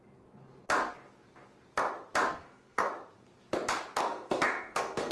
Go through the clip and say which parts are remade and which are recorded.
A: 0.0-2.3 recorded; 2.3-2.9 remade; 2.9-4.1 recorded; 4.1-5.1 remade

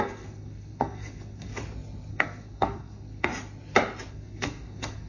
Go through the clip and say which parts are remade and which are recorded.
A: 0.0-1.5 remade; 1.5-2.1 recorded; 2.1-3.3 remade; 3.3-4.1 recorded; 4.1-5.1 remade

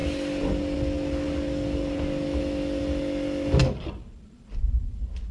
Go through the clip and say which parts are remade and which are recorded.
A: 0.0-5.3 recorded

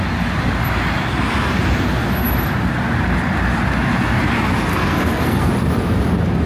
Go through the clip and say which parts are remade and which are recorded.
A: 0.0-4.7 recorded; 4.7-5.5 remade; 5.5-6.5 recorded

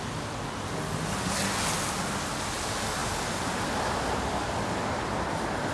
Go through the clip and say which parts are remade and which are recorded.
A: 0.0-5.7 recorded

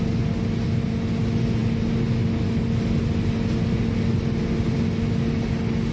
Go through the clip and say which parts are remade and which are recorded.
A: 0.0-5.9 recorded

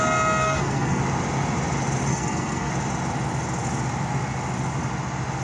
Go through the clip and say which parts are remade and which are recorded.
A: 0.0-0.4 recorded; 0.4-1.0 remade; 1.0-2.1 recorded; 2.1-2.7 remade; 2.7-5.4 recorded

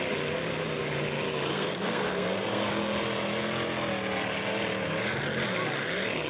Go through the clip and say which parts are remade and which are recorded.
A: 0.0-1.5 recorded; 1.5-2.7 remade; 2.7-6.3 recorded